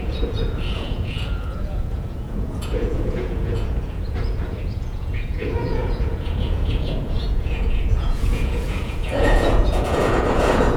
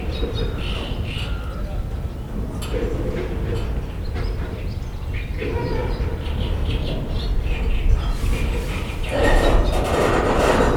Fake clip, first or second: first